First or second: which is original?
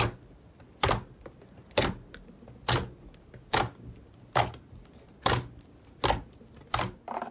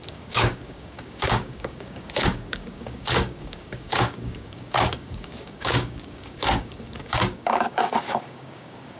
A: first